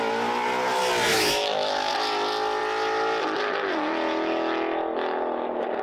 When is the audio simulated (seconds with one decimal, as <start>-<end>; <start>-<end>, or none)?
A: 1.1-1.9